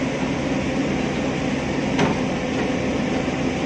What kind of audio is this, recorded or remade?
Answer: recorded